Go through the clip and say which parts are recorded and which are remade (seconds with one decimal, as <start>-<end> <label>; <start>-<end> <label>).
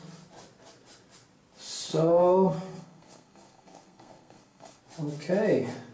0.0-1.9 recorded; 1.9-4.8 remade; 4.8-5.9 recorded